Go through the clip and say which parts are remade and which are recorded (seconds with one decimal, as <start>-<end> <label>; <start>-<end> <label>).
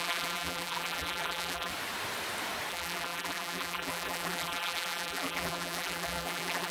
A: 0.0-1.7 remade; 1.7-2.7 recorded; 2.7-6.7 remade